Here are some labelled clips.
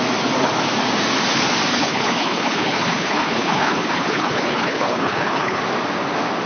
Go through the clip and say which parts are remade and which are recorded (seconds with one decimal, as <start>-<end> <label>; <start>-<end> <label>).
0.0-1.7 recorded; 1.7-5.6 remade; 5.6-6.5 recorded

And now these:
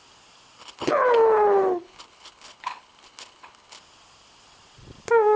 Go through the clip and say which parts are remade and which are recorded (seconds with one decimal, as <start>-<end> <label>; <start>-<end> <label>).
0.0-0.6 recorded; 0.6-3.8 remade; 3.8-5.4 recorded

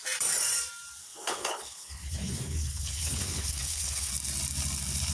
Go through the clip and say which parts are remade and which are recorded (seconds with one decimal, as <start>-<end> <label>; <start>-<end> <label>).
0.0-1.0 recorded; 1.0-4.1 remade; 4.1-5.1 recorded

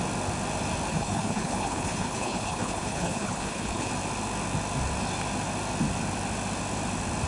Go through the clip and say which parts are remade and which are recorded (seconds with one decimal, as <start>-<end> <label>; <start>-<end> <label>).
0.0-0.9 recorded; 0.9-3.9 remade; 3.9-7.3 recorded